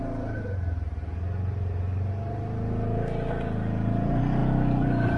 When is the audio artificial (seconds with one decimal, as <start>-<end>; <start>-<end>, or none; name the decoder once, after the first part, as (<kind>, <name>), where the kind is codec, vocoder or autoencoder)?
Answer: none